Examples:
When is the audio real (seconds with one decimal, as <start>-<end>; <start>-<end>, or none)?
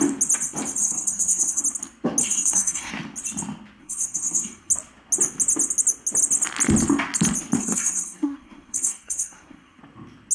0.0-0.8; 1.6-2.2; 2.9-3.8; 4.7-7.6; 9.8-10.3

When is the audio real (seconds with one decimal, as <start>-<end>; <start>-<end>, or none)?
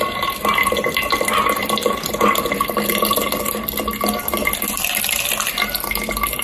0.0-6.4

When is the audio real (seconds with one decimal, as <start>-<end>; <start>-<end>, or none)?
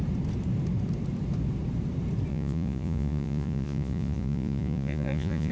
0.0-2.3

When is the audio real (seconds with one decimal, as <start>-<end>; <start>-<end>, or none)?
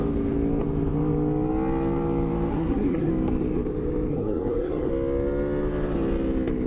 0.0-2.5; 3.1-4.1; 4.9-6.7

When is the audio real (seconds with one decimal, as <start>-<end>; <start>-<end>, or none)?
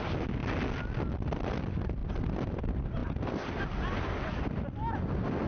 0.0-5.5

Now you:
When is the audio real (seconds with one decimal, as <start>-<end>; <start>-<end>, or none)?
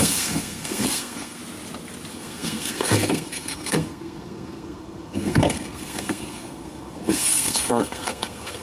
1.4-2.1